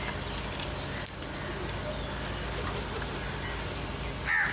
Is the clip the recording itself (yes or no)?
yes